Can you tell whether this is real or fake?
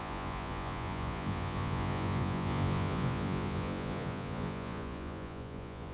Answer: fake